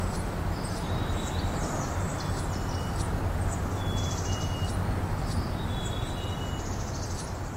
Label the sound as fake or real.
real